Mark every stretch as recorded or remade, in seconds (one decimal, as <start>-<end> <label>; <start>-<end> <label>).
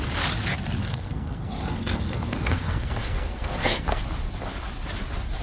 0.0-0.8 recorded; 0.8-4.0 remade; 4.0-5.4 recorded